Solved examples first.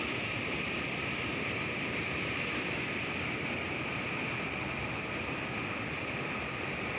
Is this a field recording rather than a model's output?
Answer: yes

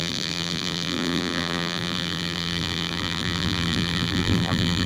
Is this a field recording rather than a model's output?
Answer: no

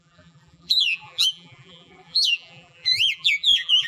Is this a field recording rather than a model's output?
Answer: no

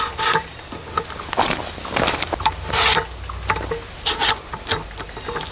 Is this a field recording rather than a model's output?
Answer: no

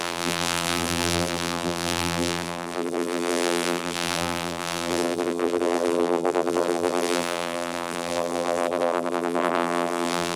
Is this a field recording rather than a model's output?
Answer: no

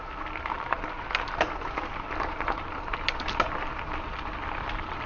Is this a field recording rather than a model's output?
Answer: no